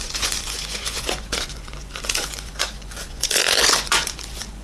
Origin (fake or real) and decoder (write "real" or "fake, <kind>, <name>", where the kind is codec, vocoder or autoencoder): fake, vocoder, Vocos